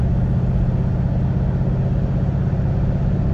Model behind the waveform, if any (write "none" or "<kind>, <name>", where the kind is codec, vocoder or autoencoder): none